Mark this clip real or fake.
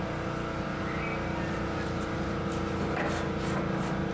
real